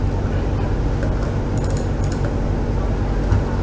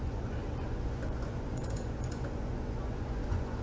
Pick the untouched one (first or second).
first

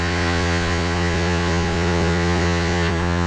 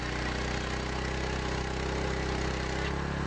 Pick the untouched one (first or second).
second